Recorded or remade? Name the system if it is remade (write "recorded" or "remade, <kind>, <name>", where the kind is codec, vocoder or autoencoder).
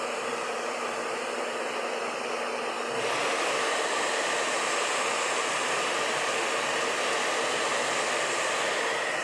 recorded